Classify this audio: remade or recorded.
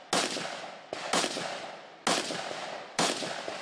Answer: recorded